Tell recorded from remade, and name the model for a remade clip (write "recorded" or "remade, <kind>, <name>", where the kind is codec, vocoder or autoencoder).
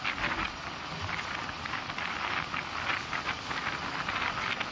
recorded